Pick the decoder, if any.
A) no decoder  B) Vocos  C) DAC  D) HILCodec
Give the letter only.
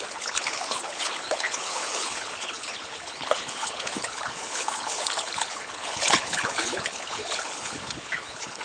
D